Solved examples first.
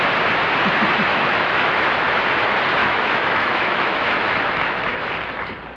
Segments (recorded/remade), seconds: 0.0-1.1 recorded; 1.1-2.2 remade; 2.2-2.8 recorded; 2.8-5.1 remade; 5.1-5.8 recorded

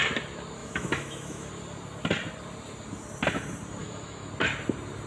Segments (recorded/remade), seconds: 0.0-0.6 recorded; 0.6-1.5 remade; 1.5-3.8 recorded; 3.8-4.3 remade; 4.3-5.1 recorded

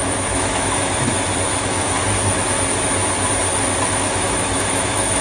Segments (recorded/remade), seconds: 0.0-1.1 remade; 1.1-1.6 recorded; 1.6-2.0 remade; 2.0-3.9 recorded; 3.9-5.2 remade